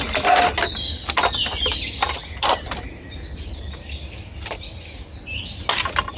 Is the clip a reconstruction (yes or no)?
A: no